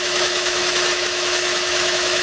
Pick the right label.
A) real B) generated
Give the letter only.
B